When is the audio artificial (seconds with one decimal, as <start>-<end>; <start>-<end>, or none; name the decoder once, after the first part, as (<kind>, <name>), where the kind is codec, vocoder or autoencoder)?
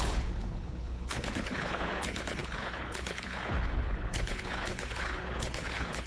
0.0-6.1 (codec, HILCodec)